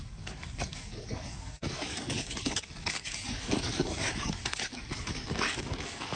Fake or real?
fake